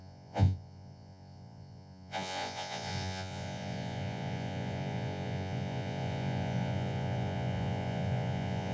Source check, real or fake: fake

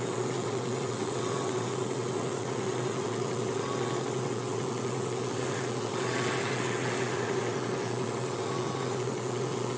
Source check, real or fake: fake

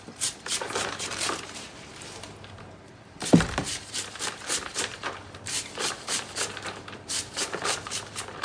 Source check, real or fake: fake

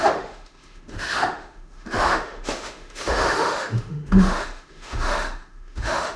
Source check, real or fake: fake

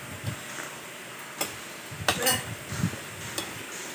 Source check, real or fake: real